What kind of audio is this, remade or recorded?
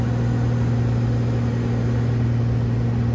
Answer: recorded